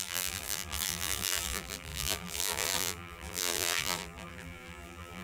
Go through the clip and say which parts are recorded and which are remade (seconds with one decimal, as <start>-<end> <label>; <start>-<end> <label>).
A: 0.0-5.2 remade